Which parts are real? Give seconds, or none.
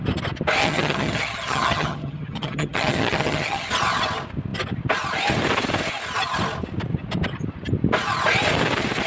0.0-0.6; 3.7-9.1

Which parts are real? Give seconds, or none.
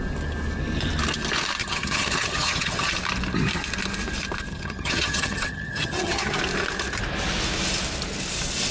0.0-1.6; 2.9-4.5; 6.4-8.7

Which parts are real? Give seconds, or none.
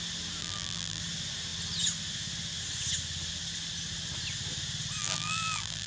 0.0-0.4; 1.0-5.0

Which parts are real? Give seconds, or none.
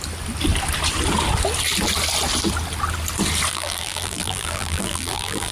0.0-3.5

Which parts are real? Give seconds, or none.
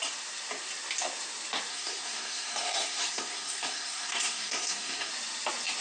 0.0-1.7; 5.1-5.8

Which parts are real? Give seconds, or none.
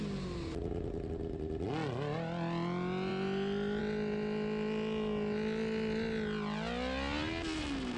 0.0-8.0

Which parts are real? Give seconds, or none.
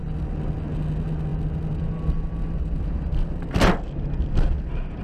0.0-5.0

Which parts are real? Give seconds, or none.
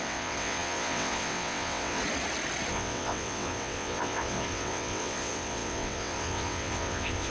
2.0-2.7